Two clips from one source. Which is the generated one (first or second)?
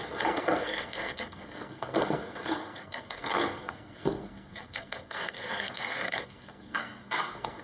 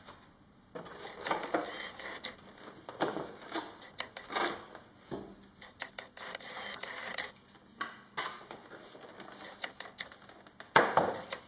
first